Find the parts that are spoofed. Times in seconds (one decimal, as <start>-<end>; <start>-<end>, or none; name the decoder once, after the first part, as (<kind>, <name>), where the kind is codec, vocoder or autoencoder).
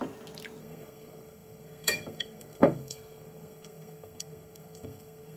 0.6-5.4 (codec, SNAC)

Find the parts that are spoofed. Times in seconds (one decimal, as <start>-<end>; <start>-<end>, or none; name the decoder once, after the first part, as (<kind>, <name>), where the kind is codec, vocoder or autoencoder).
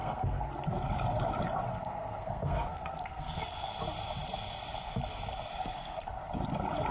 0.0-0.5 (codec, SNAC); 1.7-3.7; 5.5-6.1